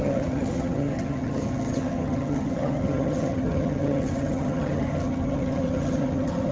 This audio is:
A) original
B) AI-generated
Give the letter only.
B